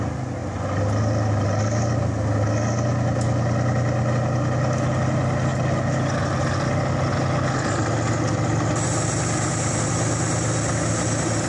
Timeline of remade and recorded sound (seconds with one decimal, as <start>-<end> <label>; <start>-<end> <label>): 0.0-11.5 recorded